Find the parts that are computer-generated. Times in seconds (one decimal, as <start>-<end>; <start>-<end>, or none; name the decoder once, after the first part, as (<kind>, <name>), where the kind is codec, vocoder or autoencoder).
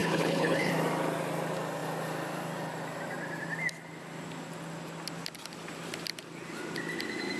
0.0-0.7 (codec, HILCodec)